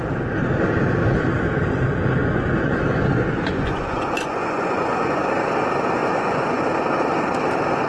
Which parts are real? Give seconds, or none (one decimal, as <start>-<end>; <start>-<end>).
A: 0.0-2.2; 5.2-6.0; 6.6-7.9